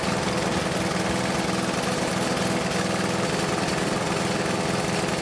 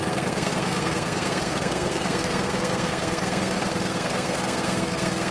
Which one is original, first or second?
first